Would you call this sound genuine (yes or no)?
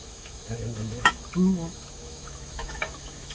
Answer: no